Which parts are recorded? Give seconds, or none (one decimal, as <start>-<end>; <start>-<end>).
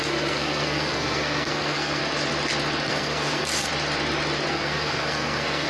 2.0-2.9; 3.7-4.5